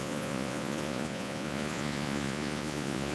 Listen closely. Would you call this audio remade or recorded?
remade